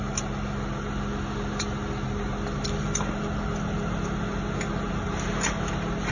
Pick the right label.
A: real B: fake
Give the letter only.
A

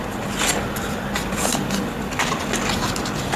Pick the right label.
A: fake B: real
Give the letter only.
B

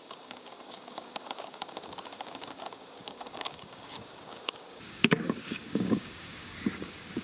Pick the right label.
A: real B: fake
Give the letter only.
B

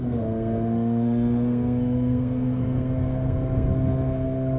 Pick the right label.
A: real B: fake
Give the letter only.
B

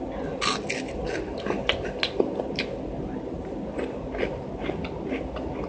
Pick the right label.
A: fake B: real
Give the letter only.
B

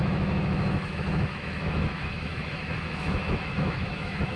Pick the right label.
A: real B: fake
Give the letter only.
B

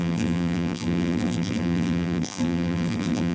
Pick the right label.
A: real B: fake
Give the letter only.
B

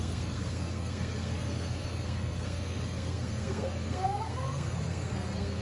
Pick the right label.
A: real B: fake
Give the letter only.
B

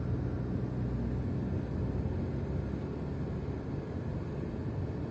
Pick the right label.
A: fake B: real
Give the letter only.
B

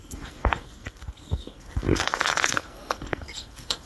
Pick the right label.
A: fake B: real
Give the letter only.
A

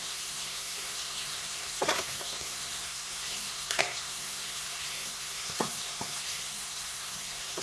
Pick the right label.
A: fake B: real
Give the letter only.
A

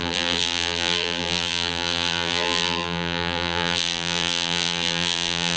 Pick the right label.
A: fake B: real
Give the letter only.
A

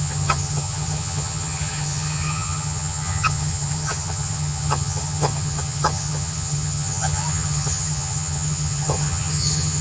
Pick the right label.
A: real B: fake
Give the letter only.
B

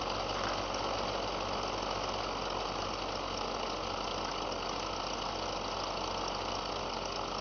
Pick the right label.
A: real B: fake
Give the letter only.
A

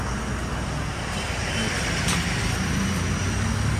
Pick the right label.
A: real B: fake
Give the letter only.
A